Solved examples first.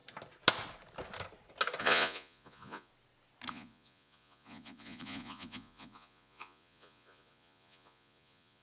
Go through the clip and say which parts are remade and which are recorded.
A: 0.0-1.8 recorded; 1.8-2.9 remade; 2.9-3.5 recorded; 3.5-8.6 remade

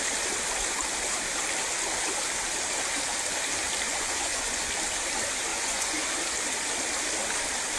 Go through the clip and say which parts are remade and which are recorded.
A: 0.0-3.9 recorded; 3.9-4.7 remade; 4.7-5.5 recorded; 5.5-6.1 remade; 6.1-7.8 recorded

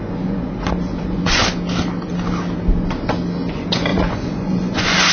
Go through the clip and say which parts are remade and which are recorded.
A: 0.0-1.4 remade; 1.4-3.5 recorded; 3.5-5.1 remade

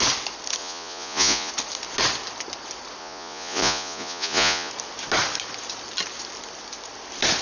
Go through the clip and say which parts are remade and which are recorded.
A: 0.0-0.6 recorded; 0.6-1.5 remade; 1.5-3.0 recorded; 3.0-4.7 remade; 4.7-7.4 recorded

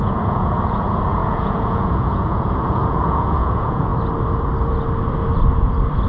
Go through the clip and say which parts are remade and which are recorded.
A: 0.0-3.9 remade; 3.9-6.1 recorded

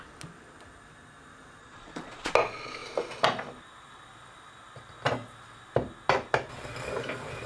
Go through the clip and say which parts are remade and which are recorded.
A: 0.0-1.6 recorded; 1.6-2.3 remade; 2.3-7.5 recorded

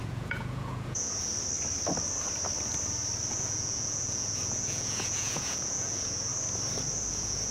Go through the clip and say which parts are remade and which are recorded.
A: 0.0-1.3 remade; 1.3-3.3 recorded; 3.3-6.3 remade; 6.3-7.1 recorded; 7.1-7.5 remade